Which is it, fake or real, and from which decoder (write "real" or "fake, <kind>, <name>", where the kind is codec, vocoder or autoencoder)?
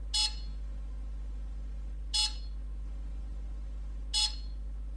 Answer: real